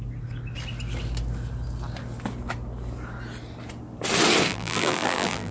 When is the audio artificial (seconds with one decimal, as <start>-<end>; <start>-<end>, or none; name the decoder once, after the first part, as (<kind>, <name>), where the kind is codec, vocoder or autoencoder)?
4.5-5.5 (vocoder, BigVGAN v2)